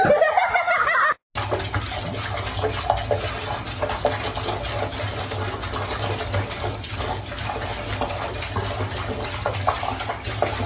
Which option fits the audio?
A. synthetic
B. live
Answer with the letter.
B